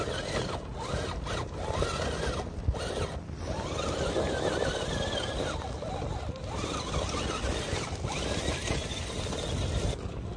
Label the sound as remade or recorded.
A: recorded